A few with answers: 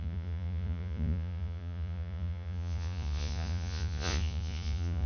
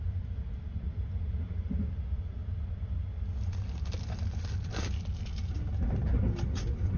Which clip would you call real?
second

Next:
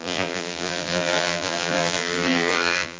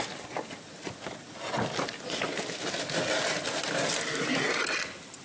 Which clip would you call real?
second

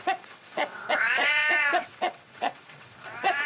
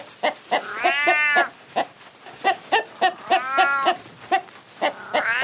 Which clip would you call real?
second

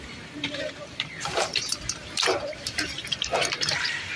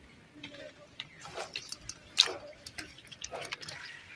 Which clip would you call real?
second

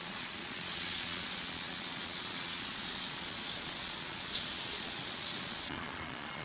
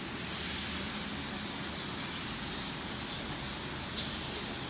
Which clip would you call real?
second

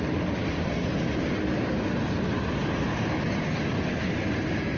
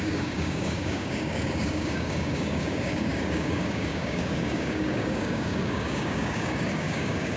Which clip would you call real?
first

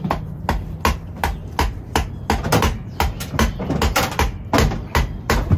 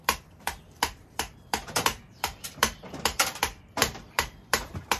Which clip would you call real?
first